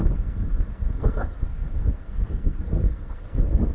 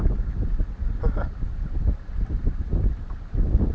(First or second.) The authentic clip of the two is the second